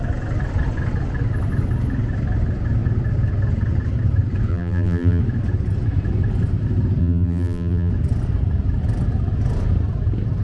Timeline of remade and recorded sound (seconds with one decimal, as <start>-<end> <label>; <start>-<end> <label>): 0.0-4.5 recorded; 4.5-5.2 remade; 5.2-7.0 recorded; 7.0-7.9 remade; 7.9-10.4 recorded